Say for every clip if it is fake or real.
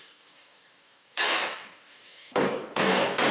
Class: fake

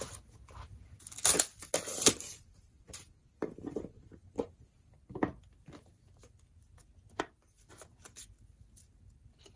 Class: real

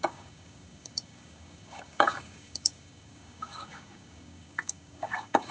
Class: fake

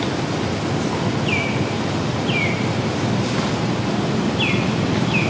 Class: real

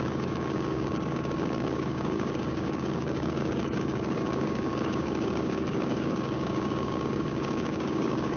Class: fake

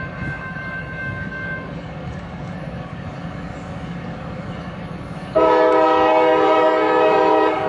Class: fake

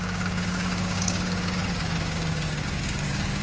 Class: fake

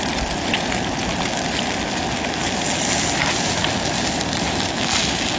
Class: real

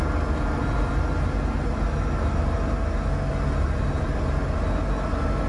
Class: real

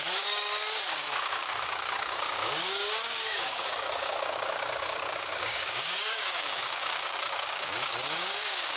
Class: fake